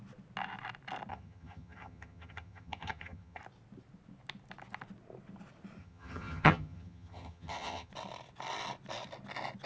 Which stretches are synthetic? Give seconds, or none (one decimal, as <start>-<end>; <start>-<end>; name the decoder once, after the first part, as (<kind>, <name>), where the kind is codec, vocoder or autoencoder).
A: 1.1-3.4 (vocoder, HiFi-GAN); 5.8-7.9